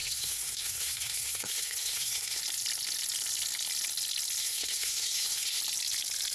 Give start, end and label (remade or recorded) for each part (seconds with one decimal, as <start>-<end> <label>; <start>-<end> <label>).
0.0-2.4 remade; 2.4-4.4 recorded; 4.4-5.6 remade; 5.6-6.3 recorded